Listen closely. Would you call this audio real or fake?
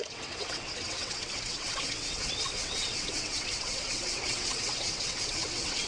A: fake